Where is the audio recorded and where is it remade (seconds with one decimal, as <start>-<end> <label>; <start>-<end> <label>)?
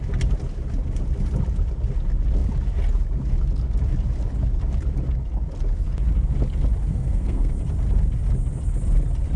0.0-6.9 recorded; 6.9-7.6 remade; 7.6-9.4 recorded